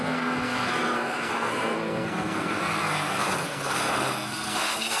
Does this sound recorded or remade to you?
remade